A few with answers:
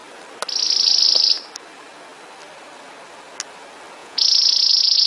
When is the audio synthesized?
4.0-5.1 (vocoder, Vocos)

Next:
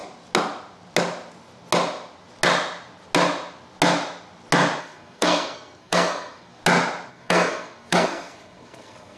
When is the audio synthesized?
4.8-6.6 (codec, SNAC); 7.1-9.2